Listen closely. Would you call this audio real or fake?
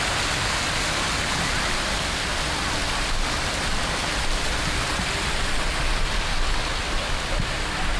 real